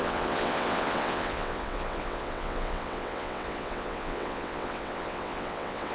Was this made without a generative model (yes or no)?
no